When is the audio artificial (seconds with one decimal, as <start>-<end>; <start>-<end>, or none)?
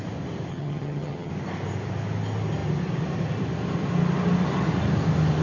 0.5-1.3